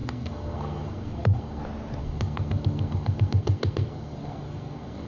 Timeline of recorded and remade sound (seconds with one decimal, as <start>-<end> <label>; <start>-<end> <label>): 0.0-1.6 remade; 1.6-2.0 recorded; 2.0-5.1 remade

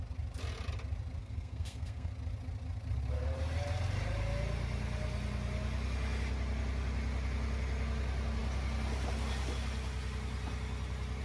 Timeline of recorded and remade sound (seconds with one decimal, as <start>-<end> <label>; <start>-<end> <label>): 0.0-1.2 recorded; 1.2-2.1 remade; 2.1-11.2 recorded

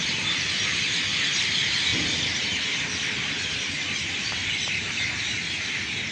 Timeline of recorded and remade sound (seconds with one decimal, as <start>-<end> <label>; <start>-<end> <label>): 0.0-6.1 recorded

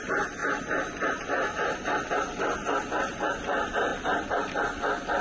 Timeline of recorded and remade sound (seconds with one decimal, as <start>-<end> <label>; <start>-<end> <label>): 0.0-5.2 recorded

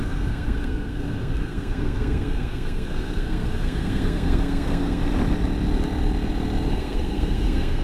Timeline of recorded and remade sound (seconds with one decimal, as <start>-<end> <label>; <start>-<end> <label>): 0.0-5.0 remade; 5.0-6.7 recorded; 6.7-7.8 remade

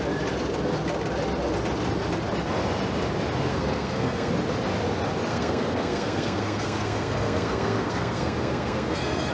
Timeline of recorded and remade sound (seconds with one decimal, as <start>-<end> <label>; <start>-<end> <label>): 0.0-3.5 recorded; 3.5-4.3 remade; 4.3-5.3 recorded; 5.3-9.3 remade

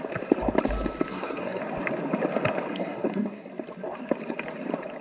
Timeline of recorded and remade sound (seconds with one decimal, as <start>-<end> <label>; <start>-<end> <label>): 0.0-1.1 recorded; 1.1-1.6 remade; 1.6-2.7 recorded; 2.7-3.5 remade; 3.5-5.0 recorded